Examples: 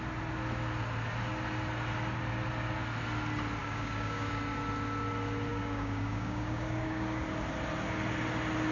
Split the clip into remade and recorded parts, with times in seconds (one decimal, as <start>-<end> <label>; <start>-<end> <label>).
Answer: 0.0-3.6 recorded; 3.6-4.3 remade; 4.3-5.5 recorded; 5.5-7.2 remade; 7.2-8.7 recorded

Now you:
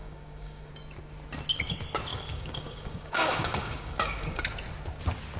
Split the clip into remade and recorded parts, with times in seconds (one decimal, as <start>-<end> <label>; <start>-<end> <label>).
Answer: 0.0-0.7 remade; 0.7-2.1 recorded; 2.1-4.4 remade; 4.4-5.4 recorded

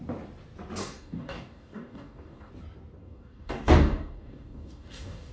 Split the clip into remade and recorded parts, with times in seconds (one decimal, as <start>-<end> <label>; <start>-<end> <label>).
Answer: 0.0-0.8 recorded; 0.8-2.5 remade; 2.5-3.0 recorded; 3.0-5.3 remade